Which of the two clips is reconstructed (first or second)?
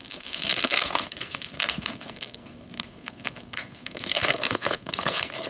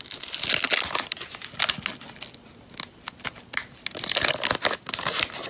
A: first